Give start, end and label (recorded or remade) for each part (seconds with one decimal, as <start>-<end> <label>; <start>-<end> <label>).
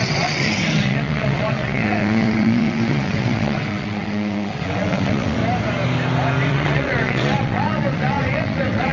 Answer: 0.0-5.4 remade; 5.4-6.5 recorded; 6.5-8.9 remade